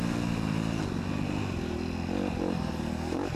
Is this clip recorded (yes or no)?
yes